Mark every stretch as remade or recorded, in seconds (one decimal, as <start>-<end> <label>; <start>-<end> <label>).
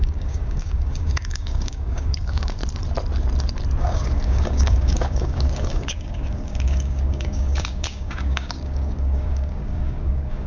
0.0-2.6 remade; 2.6-3.8 recorded; 3.8-10.5 remade